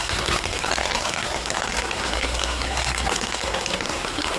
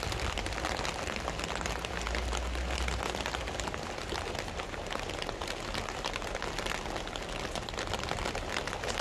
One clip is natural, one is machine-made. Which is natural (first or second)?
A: second